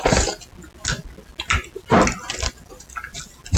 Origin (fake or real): real